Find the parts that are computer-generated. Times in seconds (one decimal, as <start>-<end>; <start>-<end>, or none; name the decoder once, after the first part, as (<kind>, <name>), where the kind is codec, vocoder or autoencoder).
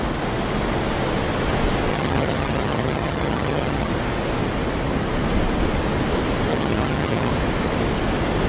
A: 1.9-3.9 (vocoder, HiFi-GAN); 6.5-7.3